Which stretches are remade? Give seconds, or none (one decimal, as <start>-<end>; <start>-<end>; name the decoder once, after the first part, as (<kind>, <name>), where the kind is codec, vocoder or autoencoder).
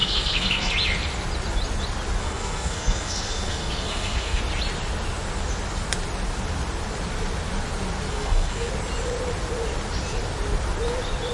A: 0.0-0.7 (codec, SNAC); 2.2-4.4; 8.1-8.7